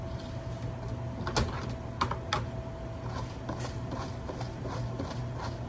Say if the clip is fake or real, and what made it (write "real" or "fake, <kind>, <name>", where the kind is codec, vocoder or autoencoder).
real